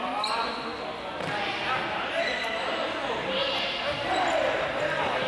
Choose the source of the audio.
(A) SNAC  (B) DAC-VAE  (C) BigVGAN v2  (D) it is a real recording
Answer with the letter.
D